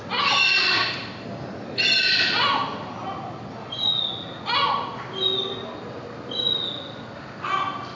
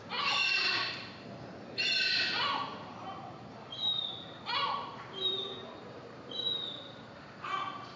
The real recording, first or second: first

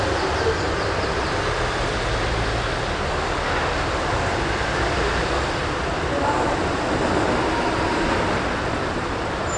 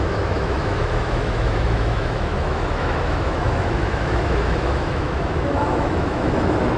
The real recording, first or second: first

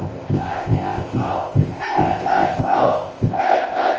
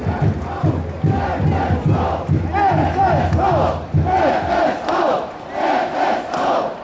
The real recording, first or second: second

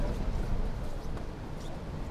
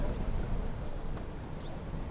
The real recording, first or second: first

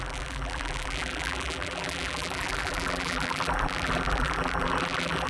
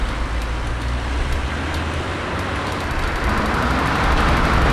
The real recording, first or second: second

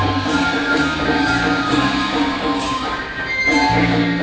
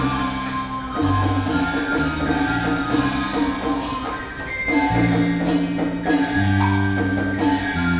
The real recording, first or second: second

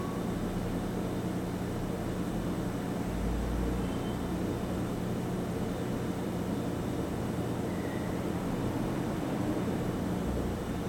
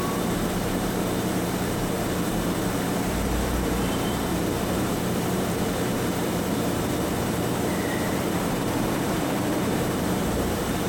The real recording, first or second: first